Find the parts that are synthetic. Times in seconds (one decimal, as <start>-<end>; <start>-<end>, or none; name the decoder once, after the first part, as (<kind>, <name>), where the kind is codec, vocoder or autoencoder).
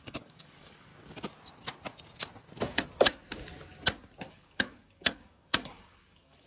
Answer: 0.0-0.9 (codec, DAC); 4.3-6.5